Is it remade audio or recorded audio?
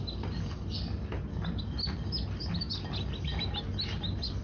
recorded